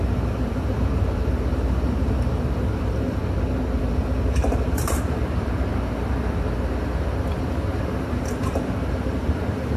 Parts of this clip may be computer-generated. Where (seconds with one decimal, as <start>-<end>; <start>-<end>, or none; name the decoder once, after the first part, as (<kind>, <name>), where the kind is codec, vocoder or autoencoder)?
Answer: 0.0-3.2 (vocoder, BigVGAN v2); 3.8-9.8